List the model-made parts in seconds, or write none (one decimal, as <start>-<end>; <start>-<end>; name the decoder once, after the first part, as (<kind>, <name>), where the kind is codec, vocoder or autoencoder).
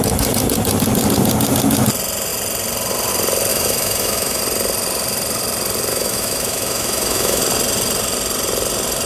3.5-4.4 (autoencoder, DAC-VAE); 5.9-7.4